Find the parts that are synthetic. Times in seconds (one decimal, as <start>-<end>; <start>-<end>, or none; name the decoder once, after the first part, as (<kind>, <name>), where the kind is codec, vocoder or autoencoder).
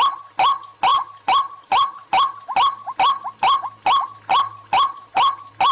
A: 0.9-2.1 (vocoder, BigVGAN v2)